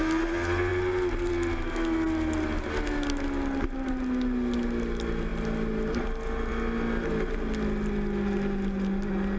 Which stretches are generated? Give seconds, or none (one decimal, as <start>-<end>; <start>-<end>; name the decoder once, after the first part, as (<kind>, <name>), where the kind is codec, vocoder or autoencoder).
none